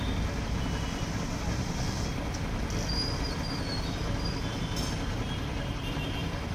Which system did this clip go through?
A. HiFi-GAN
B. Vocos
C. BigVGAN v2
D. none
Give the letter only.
D